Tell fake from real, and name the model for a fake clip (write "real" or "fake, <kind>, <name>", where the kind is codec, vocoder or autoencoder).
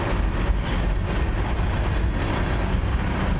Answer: real